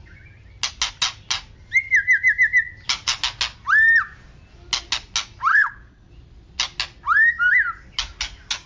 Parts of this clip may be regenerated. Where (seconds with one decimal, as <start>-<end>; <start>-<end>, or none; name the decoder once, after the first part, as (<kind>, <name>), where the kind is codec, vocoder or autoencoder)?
5.5-6.1 (codec, HILCodec)